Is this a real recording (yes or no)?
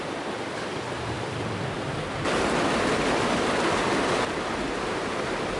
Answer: no